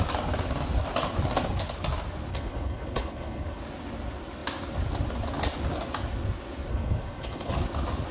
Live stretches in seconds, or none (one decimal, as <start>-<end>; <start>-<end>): 0.0-2.3; 3.6-6.7; 7.5-8.1